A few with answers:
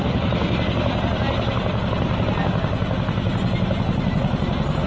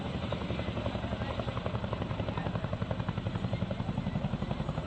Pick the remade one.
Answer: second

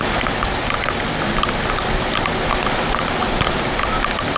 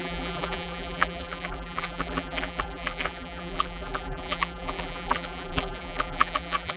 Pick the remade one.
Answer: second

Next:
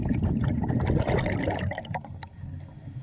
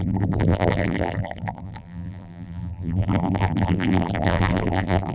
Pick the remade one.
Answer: second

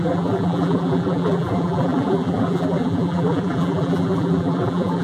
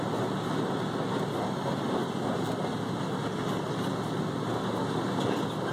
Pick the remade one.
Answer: first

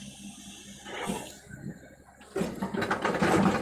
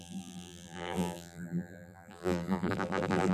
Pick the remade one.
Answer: second